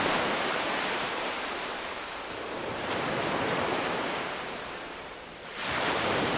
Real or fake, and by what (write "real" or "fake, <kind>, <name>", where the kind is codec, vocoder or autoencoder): fake, vocoder, BigVGAN v2